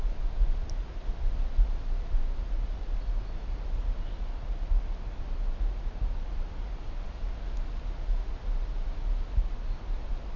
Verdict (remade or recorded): recorded